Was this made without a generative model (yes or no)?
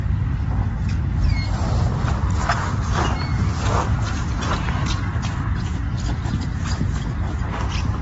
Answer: yes